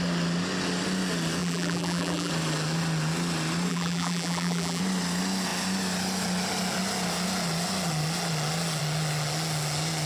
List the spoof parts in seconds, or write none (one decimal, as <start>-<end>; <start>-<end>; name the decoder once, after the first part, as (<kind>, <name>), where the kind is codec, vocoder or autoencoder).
1.4-2.3 (vocoder, BigVGAN v2); 3.7-4.8